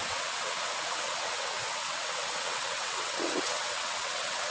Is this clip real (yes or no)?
no